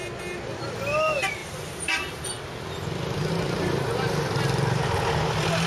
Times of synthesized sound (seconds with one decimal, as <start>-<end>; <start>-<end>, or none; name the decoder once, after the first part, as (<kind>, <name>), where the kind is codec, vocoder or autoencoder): none